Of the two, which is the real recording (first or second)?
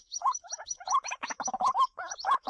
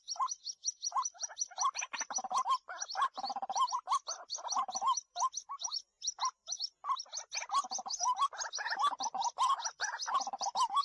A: second